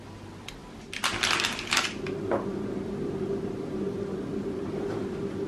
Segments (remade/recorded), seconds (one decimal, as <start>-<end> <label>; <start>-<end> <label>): 0.0-5.5 recorded

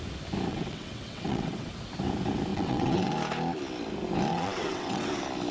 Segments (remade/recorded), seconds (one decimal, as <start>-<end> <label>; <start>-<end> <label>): 0.0-0.5 recorded; 0.5-1.7 remade; 1.7-2.5 recorded; 2.5-3.1 remade; 3.1-4.3 recorded; 4.3-5.1 remade; 5.1-5.5 recorded

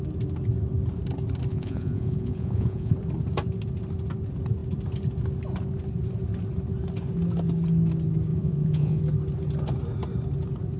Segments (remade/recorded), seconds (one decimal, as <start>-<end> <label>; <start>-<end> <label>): 0.0-1.5 recorded; 1.5-2.9 remade; 2.9-8.3 recorded; 8.3-9.0 remade; 9.0-10.8 recorded

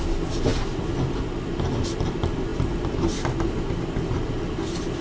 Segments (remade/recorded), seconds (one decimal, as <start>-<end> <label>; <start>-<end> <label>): 0.0-5.0 recorded

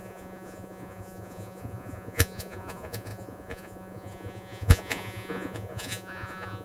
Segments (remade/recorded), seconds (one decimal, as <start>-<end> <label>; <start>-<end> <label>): 0.0-6.6 remade

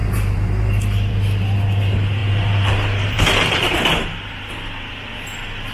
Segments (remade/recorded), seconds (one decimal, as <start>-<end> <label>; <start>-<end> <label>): 0.0-1.1 remade; 1.1-2.2 recorded; 2.2-4.5 remade; 4.5-5.7 recorded